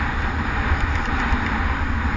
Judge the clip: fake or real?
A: real